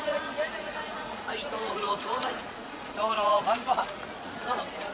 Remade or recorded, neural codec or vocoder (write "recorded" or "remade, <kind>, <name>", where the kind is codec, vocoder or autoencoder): remade, vocoder, Vocos